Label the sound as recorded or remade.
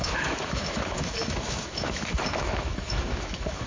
remade